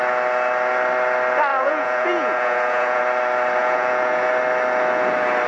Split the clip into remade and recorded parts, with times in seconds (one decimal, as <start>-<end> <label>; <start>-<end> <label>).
0.0-1.5 recorded; 1.5-3.0 remade; 3.0-3.6 recorded; 3.6-4.3 remade; 4.3-5.5 recorded